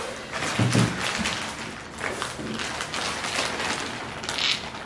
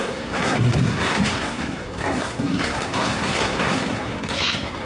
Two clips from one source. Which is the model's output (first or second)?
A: second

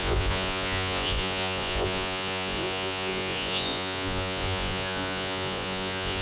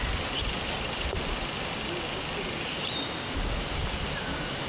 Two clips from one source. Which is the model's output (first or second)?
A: first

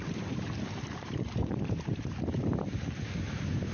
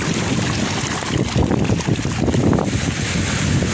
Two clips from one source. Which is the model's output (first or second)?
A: first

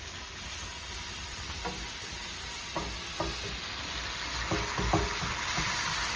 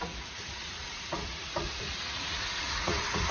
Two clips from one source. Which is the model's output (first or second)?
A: second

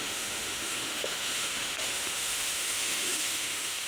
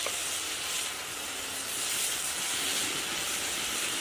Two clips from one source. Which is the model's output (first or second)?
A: first